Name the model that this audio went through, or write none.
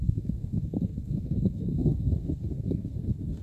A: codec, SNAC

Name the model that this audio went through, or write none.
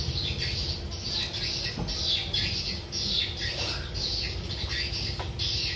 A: none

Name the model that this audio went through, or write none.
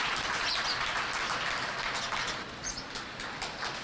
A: none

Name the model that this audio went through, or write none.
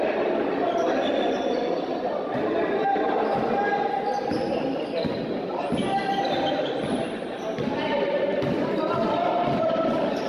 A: none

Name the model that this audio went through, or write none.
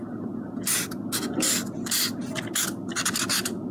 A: none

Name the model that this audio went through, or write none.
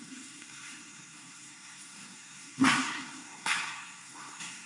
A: codec, SNAC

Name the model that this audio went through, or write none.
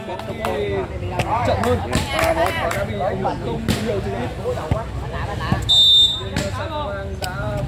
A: none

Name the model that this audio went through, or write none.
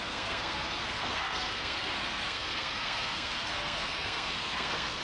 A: codec, SNAC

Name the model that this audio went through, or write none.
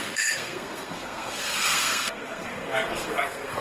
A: codec, SNAC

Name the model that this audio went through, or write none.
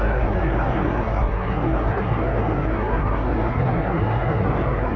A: codec, SNAC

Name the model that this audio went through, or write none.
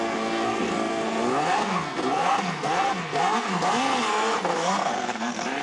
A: codec, SNAC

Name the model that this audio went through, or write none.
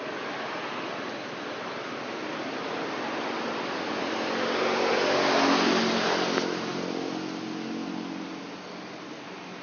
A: none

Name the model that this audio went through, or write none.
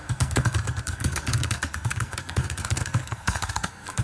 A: codec, SNAC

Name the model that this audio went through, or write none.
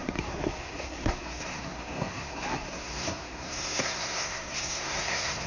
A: codec, SNAC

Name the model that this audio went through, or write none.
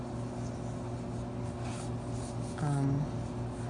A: none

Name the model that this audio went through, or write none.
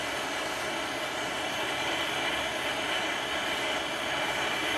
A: none